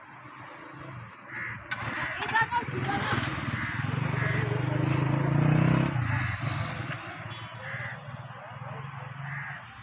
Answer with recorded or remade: recorded